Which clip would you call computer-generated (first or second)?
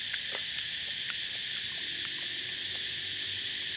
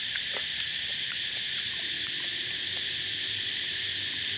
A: second